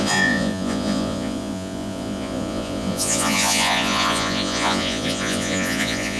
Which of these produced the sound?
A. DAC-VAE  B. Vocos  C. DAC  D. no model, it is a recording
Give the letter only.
B